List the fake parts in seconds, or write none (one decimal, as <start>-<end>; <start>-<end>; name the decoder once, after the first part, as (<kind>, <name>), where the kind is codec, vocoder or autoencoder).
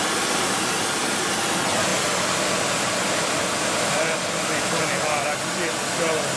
none